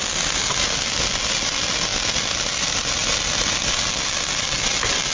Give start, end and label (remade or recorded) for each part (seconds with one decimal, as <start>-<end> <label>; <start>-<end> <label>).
0.0-3.0 recorded; 3.0-3.8 remade; 3.8-5.1 recorded